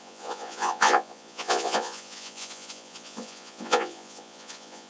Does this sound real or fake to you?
fake